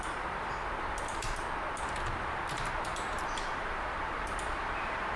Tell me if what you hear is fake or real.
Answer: fake